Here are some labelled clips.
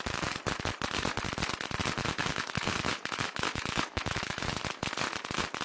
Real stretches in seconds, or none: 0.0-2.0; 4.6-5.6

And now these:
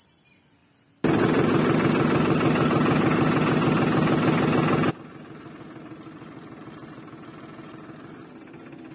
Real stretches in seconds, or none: 0.0-8.9

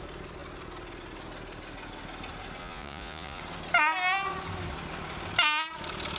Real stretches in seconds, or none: 0.0-2.6; 3.4-6.2

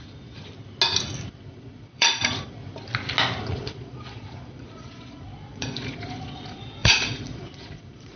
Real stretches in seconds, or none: 0.5-1.5; 2.6-3.4

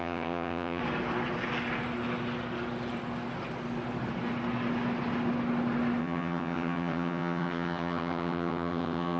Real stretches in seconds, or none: 0.8-6.0

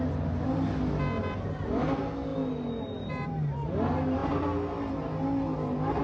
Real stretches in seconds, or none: 0.0-6.0

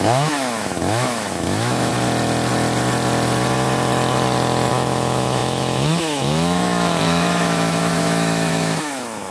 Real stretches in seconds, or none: 1.9-4.7

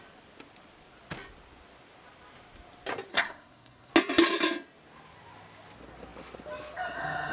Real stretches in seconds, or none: 0.0-3.1; 3.9-7.3